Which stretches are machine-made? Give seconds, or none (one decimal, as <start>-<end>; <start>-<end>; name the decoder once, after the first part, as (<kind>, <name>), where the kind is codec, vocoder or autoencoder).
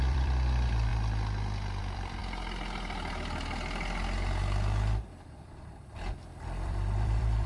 0.0-0.9 (vocoder, BigVGAN v2); 1.8-2.2; 5.2-7.5